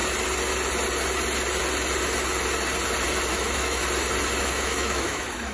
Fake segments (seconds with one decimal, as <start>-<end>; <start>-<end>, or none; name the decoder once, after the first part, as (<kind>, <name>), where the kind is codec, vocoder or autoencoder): 3.3-3.8 (autoencoder, DAC-VAE); 4.4-5.5